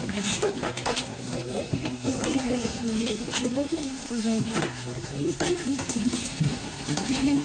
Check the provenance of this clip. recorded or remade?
remade